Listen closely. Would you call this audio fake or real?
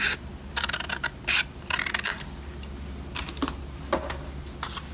real